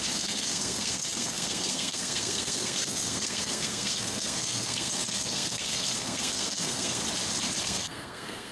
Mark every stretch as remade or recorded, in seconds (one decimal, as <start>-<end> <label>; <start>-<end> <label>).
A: 0.0-7.0 remade; 7.0-7.6 recorded; 7.6-8.5 remade